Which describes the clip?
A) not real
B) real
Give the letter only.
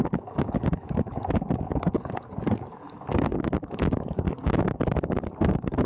A